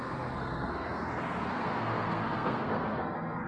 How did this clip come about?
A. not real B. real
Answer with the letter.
A